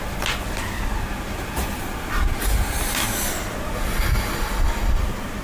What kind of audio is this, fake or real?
real